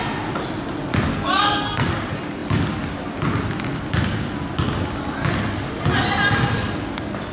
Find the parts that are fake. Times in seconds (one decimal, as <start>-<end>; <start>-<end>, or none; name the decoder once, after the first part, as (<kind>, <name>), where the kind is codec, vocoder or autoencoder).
1.1-1.9 (codec, SNAC)